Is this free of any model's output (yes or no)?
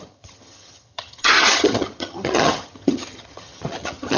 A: no